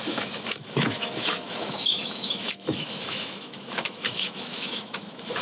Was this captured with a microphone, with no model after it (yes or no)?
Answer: no